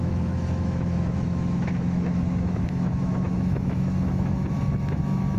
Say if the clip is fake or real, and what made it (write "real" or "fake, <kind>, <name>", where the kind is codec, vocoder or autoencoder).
fake, autoencoder, DAC-VAE